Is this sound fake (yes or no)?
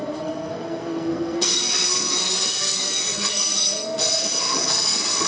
yes